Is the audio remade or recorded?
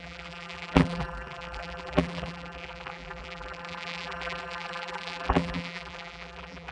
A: remade